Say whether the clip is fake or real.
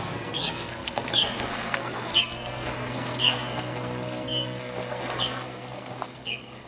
fake